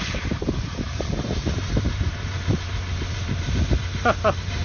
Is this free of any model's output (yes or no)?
no